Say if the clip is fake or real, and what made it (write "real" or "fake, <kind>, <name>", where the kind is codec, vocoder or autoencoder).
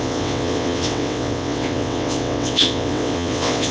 fake, vocoder, WaveNeXt